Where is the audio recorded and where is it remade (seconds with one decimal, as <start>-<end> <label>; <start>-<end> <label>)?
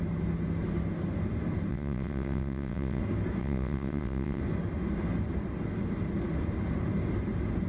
0.0-1.7 recorded; 1.7-3.0 remade; 3.0-3.4 recorded; 3.4-4.4 remade; 4.4-7.7 recorded